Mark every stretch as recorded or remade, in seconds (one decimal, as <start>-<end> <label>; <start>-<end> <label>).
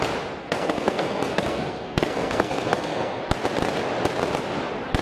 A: 0.0-0.4 recorded; 0.4-3.2 remade; 3.2-5.0 recorded